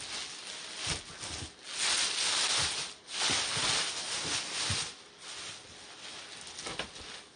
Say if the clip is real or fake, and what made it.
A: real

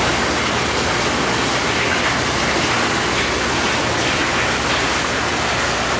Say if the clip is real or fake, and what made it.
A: real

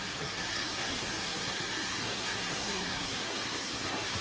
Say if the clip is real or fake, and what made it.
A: fake, codec, SNAC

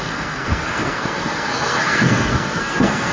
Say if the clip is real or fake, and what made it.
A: fake, codec, SNAC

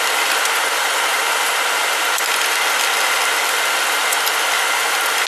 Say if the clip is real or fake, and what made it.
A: real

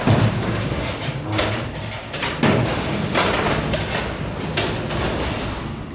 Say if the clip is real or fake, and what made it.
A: real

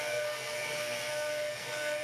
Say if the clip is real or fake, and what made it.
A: fake, codec, SNAC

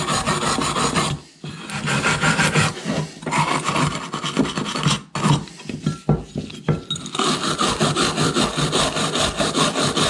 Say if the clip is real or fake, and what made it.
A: real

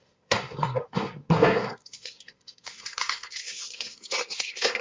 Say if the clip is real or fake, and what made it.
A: fake, codec, SNAC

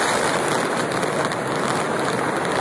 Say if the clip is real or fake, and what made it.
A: real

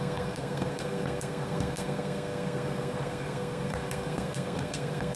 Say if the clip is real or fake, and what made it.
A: fake, codec, SNAC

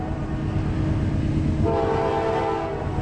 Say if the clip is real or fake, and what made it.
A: real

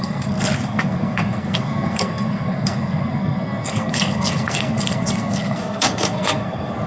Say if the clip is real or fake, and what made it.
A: fake, codec, SNAC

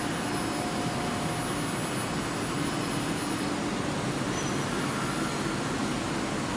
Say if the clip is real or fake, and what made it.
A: real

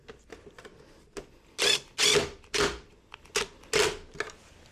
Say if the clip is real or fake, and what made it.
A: real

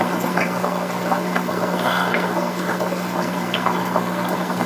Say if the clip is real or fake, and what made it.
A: fake, codec, SNAC